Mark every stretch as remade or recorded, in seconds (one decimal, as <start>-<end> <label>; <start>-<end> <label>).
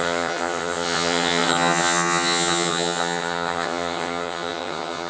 0.0-5.1 remade